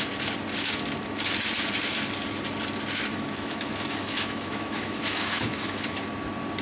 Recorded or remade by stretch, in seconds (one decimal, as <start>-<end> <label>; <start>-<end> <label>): 0.0-3.1 recorded; 3.1-6.0 remade; 6.0-6.6 recorded